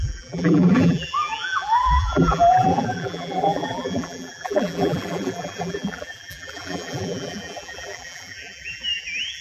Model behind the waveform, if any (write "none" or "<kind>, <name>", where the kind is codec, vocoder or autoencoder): vocoder, BigVGAN v2